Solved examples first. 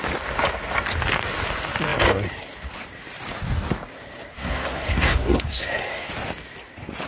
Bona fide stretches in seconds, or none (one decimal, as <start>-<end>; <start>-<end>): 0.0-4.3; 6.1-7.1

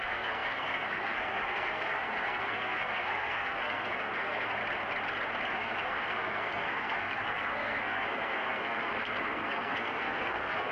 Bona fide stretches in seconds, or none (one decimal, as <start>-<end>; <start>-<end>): 4.6-5.5

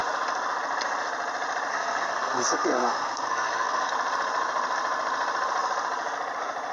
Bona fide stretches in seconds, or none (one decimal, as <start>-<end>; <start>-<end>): 0.0-1.7; 3.9-6.7

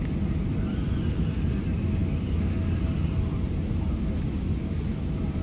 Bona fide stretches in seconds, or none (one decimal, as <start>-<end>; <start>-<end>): 0.0-5.4

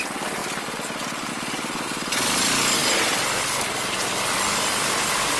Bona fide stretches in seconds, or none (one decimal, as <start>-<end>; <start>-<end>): 0.0-5.4